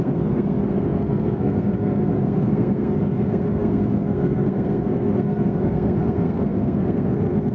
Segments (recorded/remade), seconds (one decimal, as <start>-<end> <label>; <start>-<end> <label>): 0.0-7.5 remade